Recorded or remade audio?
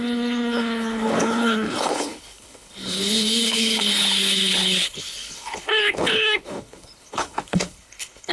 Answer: remade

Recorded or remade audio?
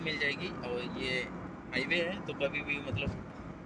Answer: recorded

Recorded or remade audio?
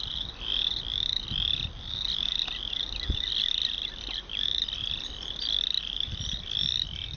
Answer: recorded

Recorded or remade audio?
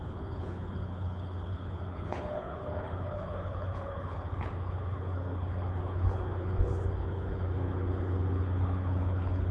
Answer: remade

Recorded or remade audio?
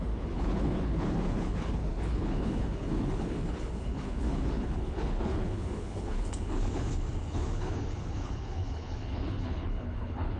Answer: remade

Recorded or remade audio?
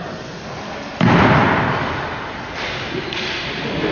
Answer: recorded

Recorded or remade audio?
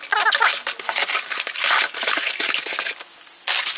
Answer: recorded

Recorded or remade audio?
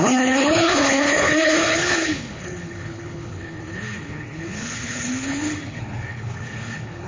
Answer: remade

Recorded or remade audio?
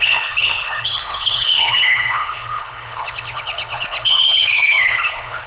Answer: remade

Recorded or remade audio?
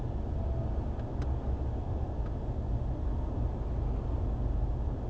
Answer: recorded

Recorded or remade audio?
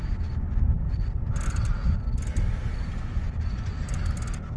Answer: recorded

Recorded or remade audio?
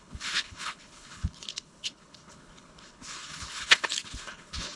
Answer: remade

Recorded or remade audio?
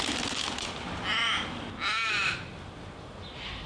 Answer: recorded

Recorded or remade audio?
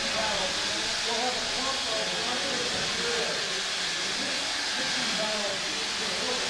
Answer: recorded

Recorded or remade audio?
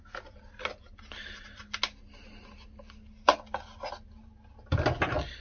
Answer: recorded